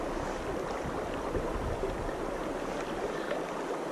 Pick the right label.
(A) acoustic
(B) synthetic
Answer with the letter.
A